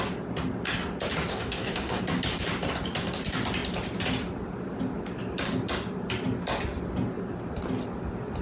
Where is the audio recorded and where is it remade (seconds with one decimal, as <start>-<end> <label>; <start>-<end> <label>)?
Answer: 0.0-1.3 recorded; 1.3-2.0 remade; 2.0-8.4 recorded